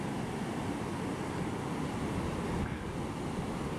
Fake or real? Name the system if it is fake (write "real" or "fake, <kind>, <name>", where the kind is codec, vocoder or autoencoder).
real